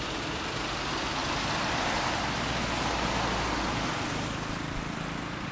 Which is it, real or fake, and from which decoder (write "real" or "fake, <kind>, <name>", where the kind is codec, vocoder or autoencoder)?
real